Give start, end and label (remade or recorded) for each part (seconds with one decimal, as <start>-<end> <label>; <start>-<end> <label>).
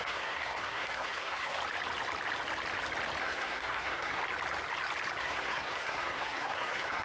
0.0-1.6 remade; 1.6-3.2 recorded; 3.2-4.2 remade; 4.2-5.2 recorded; 5.2-7.0 remade